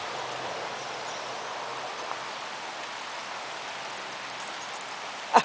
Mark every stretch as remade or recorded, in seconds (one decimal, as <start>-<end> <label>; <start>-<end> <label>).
0.0-5.4 recorded